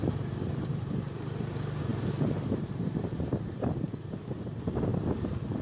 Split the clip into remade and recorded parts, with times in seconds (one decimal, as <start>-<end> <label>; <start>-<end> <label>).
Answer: 0.0-4.9 remade; 4.9-5.6 recorded